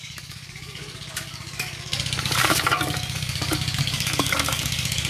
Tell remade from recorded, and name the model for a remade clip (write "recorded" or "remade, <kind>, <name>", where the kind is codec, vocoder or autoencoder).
remade, codec, DAC